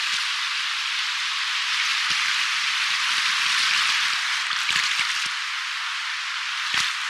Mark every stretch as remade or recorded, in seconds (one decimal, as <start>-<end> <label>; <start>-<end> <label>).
0.0-7.1 recorded